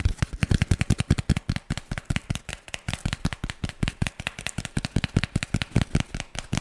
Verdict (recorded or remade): recorded